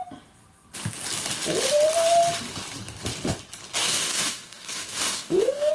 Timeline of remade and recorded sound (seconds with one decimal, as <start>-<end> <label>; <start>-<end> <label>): 0.0-3.8 recorded; 3.8-5.7 remade